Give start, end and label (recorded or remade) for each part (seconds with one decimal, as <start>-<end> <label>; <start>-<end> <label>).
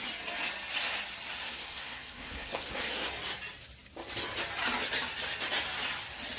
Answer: 0.0-1.4 recorded; 1.4-3.1 remade; 3.1-6.4 recorded